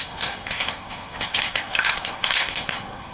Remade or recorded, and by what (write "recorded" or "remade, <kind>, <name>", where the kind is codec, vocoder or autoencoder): remade, codec, SNAC